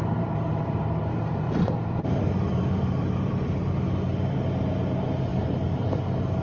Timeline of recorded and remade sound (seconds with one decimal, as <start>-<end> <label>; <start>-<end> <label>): 0.0-3.3 remade; 3.3-6.4 recorded